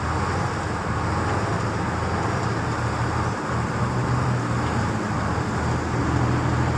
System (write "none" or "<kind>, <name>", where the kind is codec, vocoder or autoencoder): none